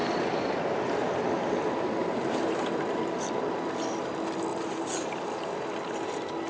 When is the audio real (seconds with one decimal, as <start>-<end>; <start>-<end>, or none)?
0.7-2.0; 3.4-4.5; 5.2-6.5